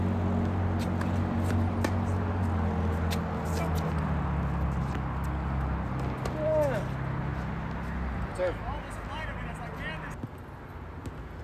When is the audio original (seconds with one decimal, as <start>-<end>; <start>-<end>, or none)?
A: 0.0-11.4